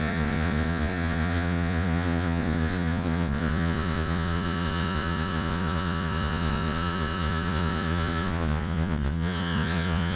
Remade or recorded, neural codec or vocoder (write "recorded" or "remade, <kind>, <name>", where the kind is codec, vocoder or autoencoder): remade, vocoder, Vocos